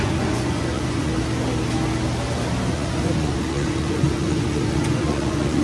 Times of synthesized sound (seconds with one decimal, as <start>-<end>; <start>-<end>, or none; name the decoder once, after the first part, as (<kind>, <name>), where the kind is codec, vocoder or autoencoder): 0.0-1.1 (vocoder, Vocos); 2.7-5.6